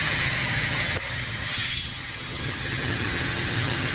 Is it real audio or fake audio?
fake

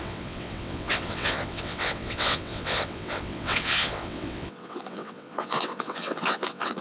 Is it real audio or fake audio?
fake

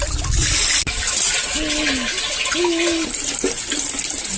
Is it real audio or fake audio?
real